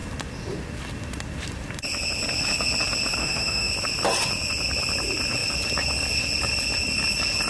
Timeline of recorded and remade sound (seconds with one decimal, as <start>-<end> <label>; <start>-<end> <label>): 0.0-3.2 recorded; 3.2-3.7 remade; 3.7-7.5 recorded